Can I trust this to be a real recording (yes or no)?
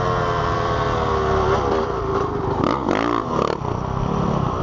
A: yes